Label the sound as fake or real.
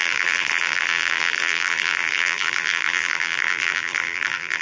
fake